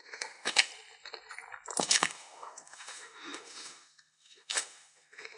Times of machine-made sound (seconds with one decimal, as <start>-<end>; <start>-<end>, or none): 0.0-0.7; 1.8-5.4